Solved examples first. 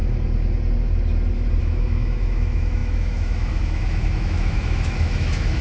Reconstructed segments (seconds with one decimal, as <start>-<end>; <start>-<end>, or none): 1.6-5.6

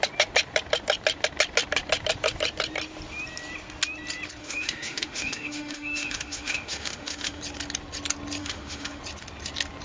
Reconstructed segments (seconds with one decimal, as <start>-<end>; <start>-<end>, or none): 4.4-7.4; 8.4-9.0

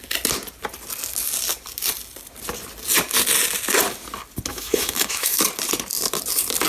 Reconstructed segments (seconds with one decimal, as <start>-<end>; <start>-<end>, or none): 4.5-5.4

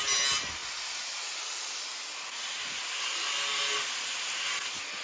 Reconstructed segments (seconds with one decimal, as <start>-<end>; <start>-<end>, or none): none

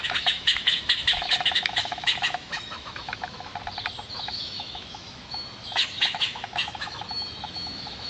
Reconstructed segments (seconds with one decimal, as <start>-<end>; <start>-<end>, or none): 0.0-3.5; 4.1-8.1

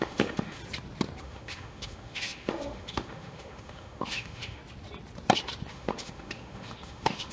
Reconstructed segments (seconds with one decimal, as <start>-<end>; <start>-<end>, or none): 0.0-0.6; 1.2-4.6; 5.7-7.3